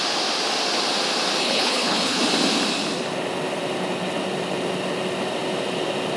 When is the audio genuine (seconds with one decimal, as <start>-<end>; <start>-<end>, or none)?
0.0-1.4; 2.2-6.2